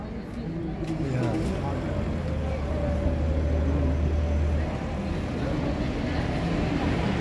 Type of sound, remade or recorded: recorded